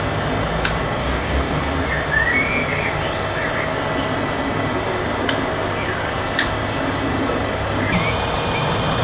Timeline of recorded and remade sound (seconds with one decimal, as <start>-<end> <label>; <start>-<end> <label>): 0.0-1.0 recorded; 1.0-1.6 remade; 1.6-9.0 recorded